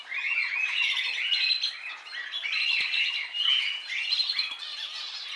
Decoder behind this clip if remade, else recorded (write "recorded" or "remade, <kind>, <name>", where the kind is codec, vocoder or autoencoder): recorded